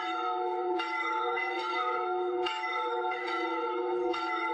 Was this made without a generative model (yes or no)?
no